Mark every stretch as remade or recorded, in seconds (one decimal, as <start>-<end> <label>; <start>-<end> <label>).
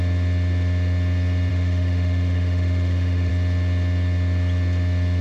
0.0-1.5 recorded; 1.5-3.3 remade; 3.3-5.2 recorded